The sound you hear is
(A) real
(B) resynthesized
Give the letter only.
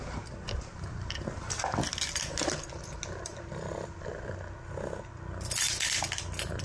A